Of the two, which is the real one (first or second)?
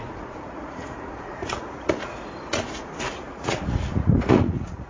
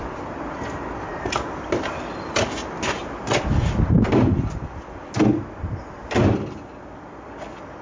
second